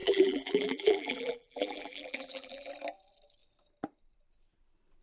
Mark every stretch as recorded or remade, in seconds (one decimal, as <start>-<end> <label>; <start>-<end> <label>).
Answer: 0.0-2.7 remade; 2.7-5.0 recorded

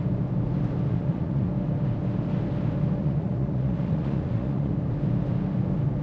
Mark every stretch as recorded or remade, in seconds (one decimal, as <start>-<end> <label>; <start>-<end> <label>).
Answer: 0.0-0.9 recorded; 0.9-1.5 remade; 1.5-3.0 recorded; 3.0-4.7 remade; 4.7-6.0 recorded

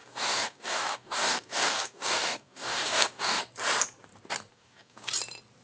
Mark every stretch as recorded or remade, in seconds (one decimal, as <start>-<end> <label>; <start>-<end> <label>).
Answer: 0.0-3.4 remade; 3.4-4.5 recorded; 4.5-5.1 remade; 5.1-5.6 recorded

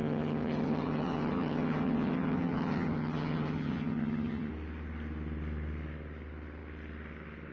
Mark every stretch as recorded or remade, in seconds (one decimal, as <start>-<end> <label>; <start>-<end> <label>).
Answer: 0.0-4.5 remade; 4.5-7.5 recorded